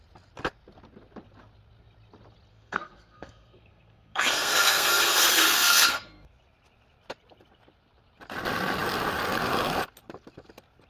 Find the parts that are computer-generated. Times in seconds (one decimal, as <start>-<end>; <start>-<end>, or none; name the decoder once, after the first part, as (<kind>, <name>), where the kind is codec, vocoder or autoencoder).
2.5-6.3 (codec, SNAC)